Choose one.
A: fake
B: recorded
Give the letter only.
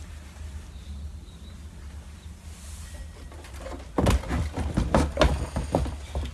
B